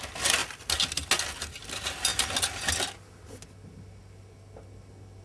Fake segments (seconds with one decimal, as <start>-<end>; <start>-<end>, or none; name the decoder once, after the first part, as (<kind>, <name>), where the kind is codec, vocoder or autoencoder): none